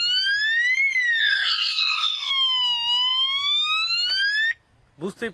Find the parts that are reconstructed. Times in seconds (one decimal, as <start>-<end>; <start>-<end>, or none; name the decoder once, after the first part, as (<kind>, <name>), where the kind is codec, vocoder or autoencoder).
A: 1.2-2.3 (codec, SNAC)